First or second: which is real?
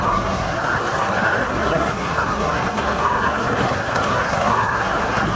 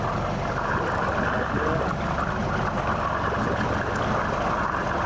second